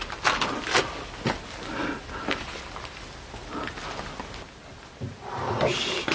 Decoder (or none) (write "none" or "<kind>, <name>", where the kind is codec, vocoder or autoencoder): none